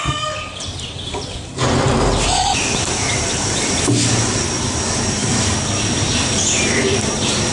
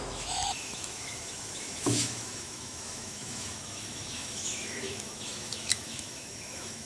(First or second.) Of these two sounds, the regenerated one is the second